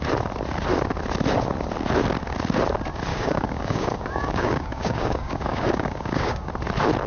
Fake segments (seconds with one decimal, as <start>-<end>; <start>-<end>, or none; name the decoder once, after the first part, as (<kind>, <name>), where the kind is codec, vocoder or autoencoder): 3.1-6.5 (codec, DAC)